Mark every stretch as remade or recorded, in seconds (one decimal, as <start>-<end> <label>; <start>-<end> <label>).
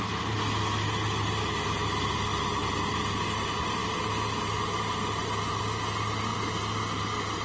0.0-7.4 recorded